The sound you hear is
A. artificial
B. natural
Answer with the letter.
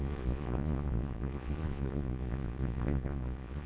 A